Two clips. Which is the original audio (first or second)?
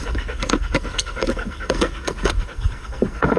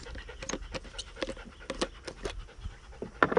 second